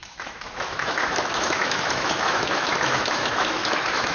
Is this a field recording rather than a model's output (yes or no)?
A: no